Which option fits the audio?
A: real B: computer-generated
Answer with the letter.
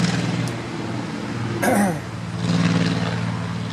A